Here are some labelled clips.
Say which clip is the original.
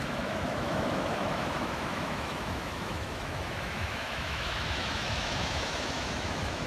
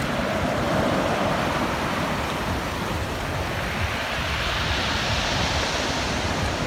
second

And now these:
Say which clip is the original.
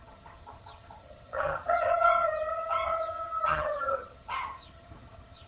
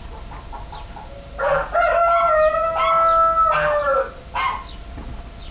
second